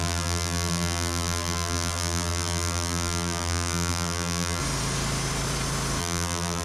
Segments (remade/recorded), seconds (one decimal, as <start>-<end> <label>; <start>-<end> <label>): 0.0-4.6 remade; 4.6-6.0 recorded; 6.0-6.6 remade